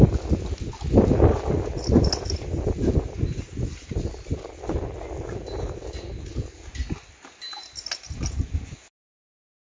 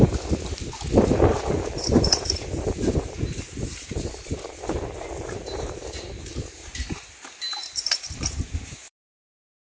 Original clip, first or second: first